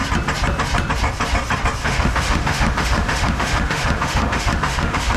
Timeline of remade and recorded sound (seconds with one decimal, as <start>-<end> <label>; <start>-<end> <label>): 0.0-1.8 recorded; 1.8-5.2 remade